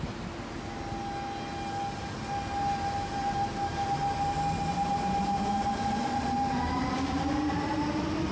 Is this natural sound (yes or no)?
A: yes